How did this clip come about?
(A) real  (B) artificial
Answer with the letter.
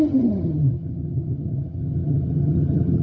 B